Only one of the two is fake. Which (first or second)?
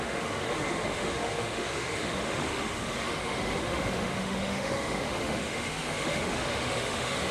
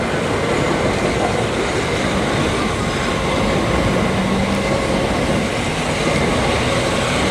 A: first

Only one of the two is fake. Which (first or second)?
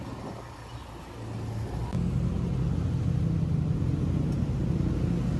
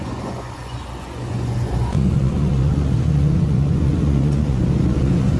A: second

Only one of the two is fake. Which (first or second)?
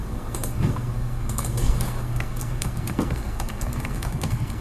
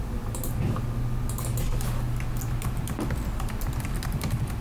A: first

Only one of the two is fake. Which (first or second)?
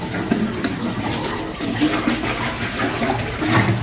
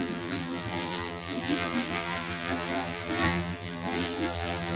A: second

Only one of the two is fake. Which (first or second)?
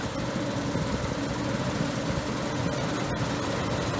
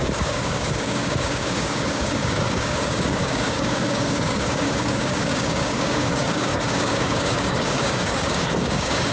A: second